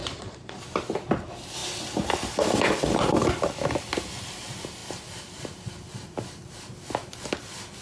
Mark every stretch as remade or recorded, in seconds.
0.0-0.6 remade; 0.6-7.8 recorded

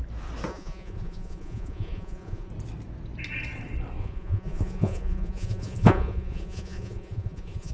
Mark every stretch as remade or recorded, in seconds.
0.0-0.5 recorded; 0.5-2.5 remade; 2.5-4.0 recorded; 4.0-7.7 remade